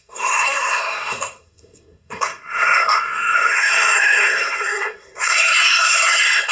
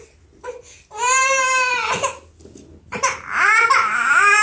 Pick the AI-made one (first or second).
first